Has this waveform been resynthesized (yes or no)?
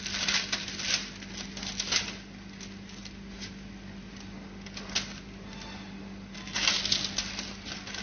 no